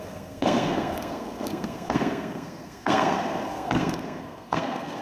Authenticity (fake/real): fake